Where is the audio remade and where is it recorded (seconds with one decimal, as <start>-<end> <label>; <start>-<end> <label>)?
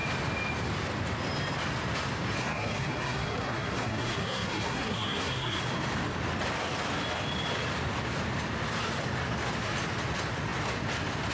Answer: 0.0-2.4 recorded; 2.4-5.6 remade; 5.6-11.3 recorded